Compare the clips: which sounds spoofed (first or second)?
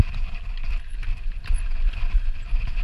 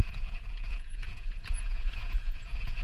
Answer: second